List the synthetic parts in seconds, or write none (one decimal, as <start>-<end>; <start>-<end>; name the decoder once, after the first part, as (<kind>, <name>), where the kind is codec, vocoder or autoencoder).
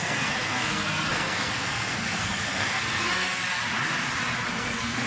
0.0-3.4 (codec, SNAC); 4.5-5.1